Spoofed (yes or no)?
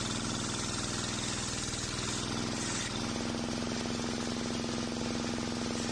no